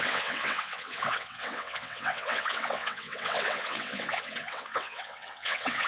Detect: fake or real fake